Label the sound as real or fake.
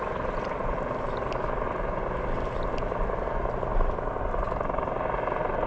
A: real